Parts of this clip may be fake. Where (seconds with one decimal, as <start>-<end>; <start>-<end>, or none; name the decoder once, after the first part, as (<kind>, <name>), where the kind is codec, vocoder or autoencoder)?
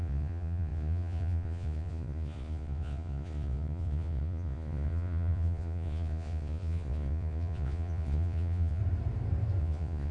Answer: 0.0-8.8 (vocoder, Vocos); 9.6-10.1